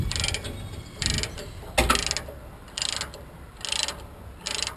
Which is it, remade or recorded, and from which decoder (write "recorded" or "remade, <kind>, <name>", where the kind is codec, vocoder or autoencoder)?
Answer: recorded